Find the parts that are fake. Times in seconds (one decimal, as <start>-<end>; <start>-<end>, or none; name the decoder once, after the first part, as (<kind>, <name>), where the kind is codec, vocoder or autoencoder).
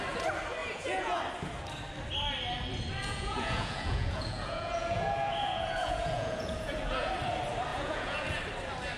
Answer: 0.6-1.2 (vocoder, Vocos); 3.0-7.1; 7.7-8.4